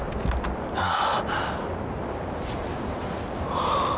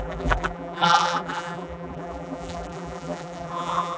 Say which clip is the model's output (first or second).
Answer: second